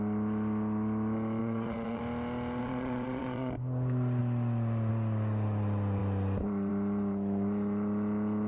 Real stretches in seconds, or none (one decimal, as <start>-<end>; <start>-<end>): 0.0-1.4; 2.0-2.6; 3.5-8.5